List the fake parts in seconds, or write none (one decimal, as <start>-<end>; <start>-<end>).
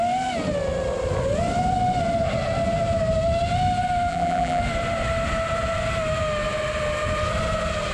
4.1-4.6